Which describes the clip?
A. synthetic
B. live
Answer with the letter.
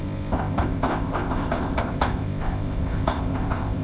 A